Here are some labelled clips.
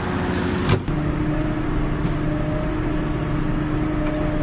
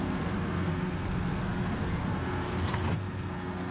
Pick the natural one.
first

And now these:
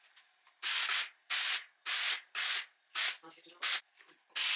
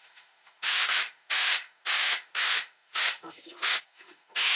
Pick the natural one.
first